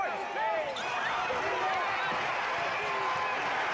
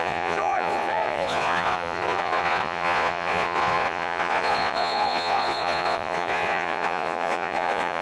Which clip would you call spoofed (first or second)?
second